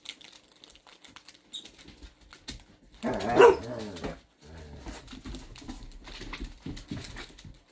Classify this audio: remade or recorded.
recorded